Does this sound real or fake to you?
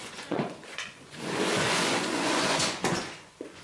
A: fake